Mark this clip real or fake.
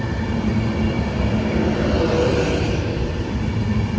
real